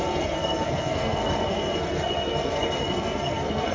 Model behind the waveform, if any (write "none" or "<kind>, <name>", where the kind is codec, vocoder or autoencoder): codec, SNAC